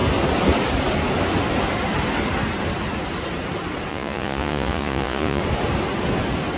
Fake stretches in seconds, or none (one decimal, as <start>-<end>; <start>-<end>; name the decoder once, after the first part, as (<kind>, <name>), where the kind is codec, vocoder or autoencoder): 3.9-5.4 (vocoder, Vocos)